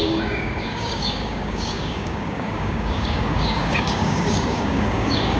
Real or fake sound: fake